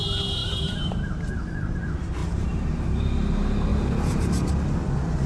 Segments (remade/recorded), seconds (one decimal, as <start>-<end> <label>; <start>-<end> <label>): 0.0-0.4 recorded; 0.4-1.4 remade; 1.4-2.2 recorded; 2.2-3.0 remade; 3.0-3.7 recorded; 3.7-4.5 remade; 4.5-5.3 recorded